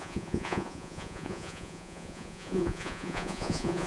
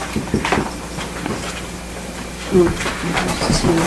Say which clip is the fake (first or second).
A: first